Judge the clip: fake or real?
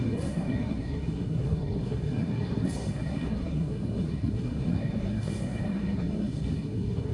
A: fake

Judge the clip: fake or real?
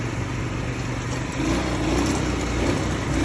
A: real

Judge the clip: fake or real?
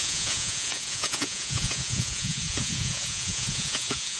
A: fake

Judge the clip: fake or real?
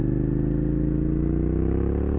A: real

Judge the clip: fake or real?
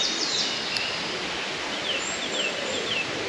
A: real